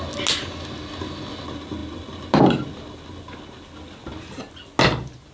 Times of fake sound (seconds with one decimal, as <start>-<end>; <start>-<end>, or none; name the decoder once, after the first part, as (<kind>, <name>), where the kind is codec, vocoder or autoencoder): none